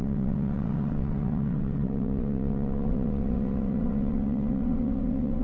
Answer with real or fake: fake